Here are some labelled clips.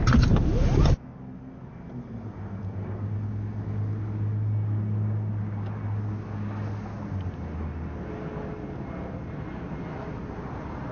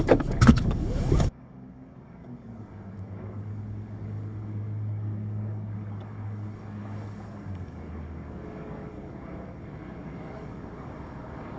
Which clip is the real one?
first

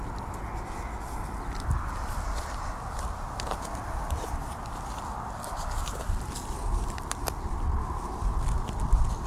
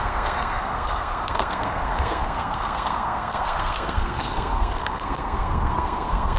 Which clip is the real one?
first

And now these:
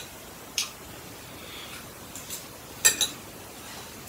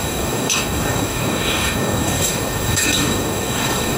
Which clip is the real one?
first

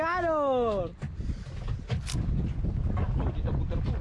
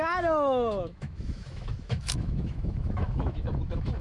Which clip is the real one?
first